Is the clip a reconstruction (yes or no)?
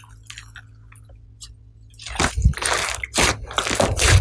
no